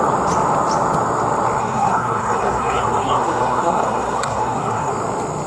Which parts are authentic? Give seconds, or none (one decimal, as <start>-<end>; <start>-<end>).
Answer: 0.0-1.6; 4.9-5.5